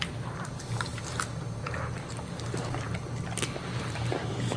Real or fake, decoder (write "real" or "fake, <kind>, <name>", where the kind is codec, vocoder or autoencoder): real